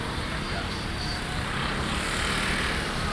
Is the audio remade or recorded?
remade